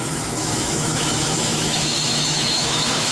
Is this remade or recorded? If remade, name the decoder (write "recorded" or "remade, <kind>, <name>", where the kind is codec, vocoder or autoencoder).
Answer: remade, autoencoder, DAC-VAE